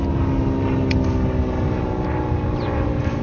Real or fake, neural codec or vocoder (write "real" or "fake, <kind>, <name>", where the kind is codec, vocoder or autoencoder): real